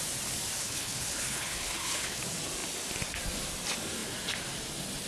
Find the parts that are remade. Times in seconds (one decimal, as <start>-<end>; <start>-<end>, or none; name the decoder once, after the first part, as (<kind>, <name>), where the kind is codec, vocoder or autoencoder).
0.6-2.2 (codec, HILCodec)